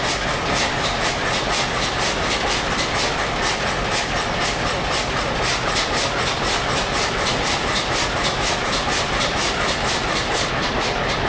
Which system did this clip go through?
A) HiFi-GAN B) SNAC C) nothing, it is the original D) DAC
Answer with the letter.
C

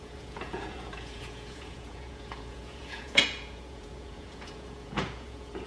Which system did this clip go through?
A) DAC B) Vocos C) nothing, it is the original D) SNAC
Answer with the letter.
B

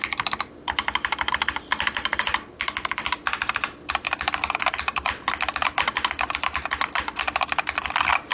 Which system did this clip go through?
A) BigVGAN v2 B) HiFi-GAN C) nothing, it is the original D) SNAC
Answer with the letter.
C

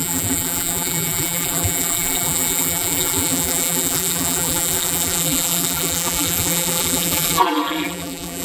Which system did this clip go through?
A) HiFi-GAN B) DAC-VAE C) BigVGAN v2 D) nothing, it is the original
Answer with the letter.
C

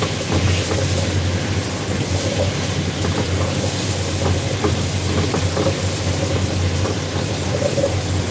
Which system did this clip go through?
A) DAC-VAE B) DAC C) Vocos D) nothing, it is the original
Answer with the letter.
D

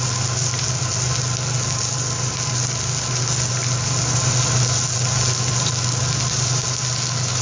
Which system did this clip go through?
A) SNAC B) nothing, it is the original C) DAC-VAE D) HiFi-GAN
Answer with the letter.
B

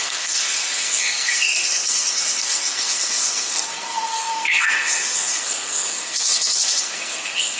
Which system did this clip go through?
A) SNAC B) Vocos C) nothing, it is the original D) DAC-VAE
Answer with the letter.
A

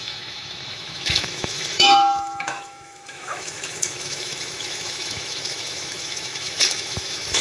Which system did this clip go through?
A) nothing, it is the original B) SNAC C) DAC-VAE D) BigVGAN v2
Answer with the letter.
C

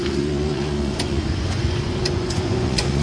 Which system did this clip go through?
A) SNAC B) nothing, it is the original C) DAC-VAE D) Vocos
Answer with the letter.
D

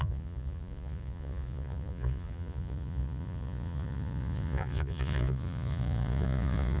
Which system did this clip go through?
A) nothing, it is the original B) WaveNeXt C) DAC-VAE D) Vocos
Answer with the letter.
D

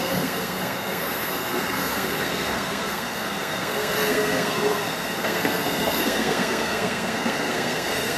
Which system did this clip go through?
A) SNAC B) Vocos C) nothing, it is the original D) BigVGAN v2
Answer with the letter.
A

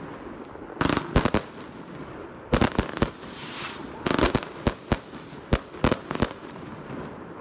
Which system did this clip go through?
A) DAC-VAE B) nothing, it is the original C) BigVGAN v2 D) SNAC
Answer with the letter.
B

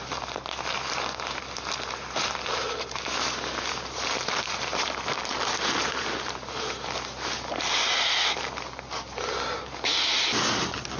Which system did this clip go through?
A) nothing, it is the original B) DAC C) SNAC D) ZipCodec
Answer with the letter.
A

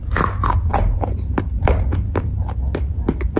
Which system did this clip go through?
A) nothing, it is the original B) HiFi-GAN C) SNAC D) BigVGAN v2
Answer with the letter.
A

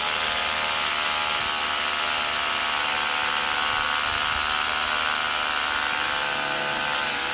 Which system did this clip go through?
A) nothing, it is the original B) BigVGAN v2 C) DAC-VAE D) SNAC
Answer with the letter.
A